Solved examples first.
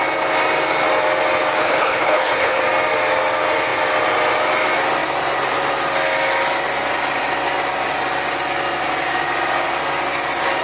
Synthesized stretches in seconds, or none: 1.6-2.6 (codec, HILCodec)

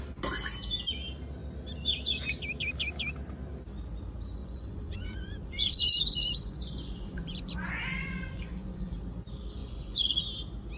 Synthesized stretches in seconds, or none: 4.4-9.0 (vocoder, Vocos); 9.6-10.2

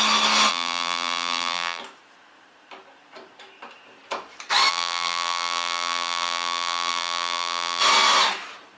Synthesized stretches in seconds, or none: 0.5-1.8 (vocoder, BigVGAN v2); 4.7-7.8

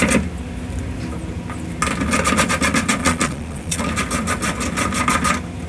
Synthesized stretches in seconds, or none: 3.0-3.8 (vocoder, Vocos)

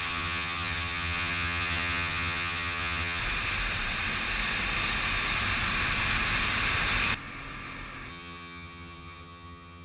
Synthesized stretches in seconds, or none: 0.0-3.2 (vocoder, HiFi-GAN); 8.1-9.8

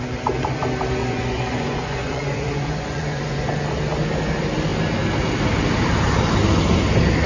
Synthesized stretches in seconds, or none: 1.0-3.5 (vocoder, Vocos)

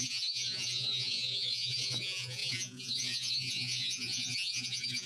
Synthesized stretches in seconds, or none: 0.0-5.1 (vocoder, Vocos)